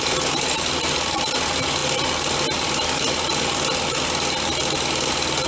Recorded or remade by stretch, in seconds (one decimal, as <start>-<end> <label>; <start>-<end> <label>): 0.0-5.5 recorded